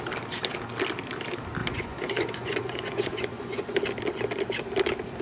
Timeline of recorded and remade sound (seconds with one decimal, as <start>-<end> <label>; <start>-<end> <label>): 0.0-1.6 recorded; 1.6-3.8 remade; 3.8-5.2 recorded